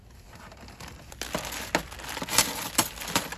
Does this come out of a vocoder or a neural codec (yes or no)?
no